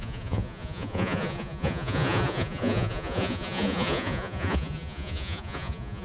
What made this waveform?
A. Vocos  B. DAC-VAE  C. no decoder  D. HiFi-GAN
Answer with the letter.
A